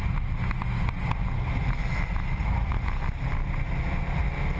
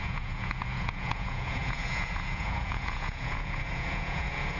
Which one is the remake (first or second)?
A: second